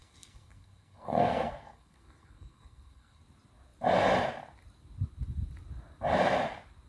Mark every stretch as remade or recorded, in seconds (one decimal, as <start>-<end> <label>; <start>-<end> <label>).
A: 0.0-3.2 remade; 3.2-6.9 recorded